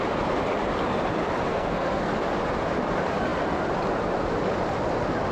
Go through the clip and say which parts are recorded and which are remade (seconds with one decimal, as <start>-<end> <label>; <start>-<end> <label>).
0.0-1.5 recorded; 1.5-2.1 remade; 2.1-5.3 recorded